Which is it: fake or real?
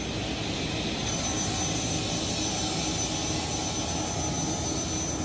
real